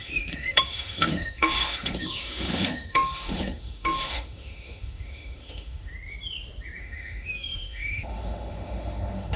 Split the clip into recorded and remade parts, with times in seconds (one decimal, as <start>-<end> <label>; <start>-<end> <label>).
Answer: 0.0-5.9 remade; 5.9-6.8 recorded; 6.8-9.4 remade